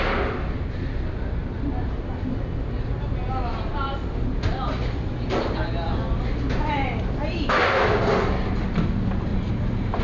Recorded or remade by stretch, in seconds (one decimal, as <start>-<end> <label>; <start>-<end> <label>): 0.0-10.0 recorded